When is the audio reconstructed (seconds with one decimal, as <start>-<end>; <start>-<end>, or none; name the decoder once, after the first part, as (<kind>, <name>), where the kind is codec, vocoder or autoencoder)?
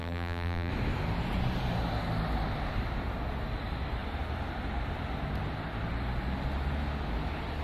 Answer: 0.0-0.7 (vocoder, BigVGAN v2)